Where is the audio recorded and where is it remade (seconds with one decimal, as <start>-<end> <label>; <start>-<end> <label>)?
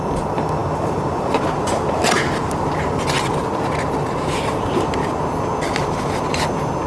0.0-6.9 recorded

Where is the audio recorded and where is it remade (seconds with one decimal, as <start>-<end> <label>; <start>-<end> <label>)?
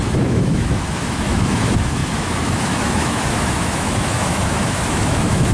0.0-5.5 remade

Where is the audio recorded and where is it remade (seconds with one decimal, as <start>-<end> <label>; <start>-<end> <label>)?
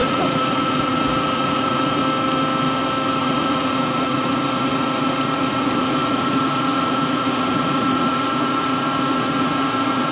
0.0-2.0 remade; 2.0-3.2 recorded; 3.2-10.1 remade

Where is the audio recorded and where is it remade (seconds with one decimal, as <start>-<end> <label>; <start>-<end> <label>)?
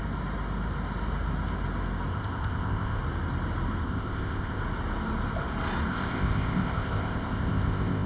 0.0-2.1 recorded; 2.1-3.0 remade; 3.0-3.8 recorded; 3.8-4.6 remade; 4.6-5.9 recorded; 5.9-8.1 remade